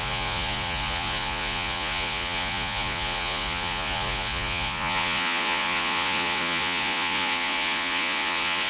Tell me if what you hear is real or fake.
fake